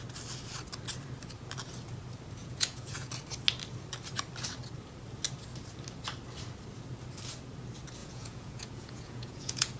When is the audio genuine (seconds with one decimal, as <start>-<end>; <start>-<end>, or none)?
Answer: 0.0-2.4; 3.1-8.0